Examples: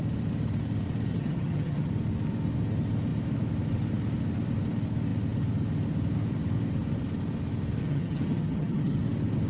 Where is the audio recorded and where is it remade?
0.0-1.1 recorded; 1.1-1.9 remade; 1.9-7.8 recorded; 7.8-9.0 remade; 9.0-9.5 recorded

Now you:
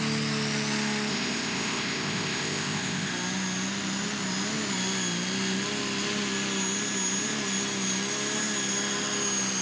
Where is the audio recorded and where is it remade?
0.0-1.1 recorded; 1.1-3.1 remade; 3.1-9.6 recorded

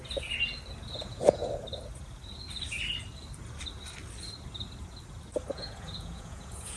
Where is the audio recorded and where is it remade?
0.0-0.9 recorded; 0.9-1.4 remade; 1.4-5.5 recorded; 5.5-6.8 remade